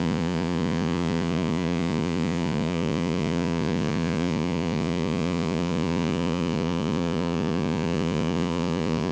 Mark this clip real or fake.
fake